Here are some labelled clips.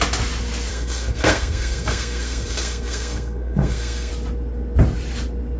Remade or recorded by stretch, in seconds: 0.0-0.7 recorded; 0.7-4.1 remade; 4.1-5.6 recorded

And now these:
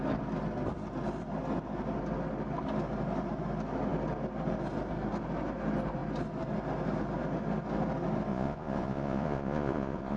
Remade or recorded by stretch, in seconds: 0.0-8.3 recorded; 8.3-10.2 remade

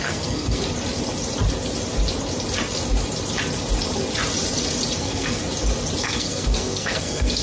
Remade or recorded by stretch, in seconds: 0.0-0.6 remade; 0.6-5.0 recorded; 5.0-5.4 remade; 5.4-6.0 recorded; 6.0-7.4 remade

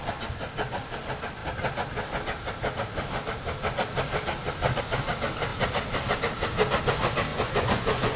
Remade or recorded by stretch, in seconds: 0.0-7.3 recorded; 7.3-8.2 remade